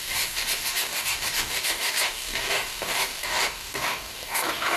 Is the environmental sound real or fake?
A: fake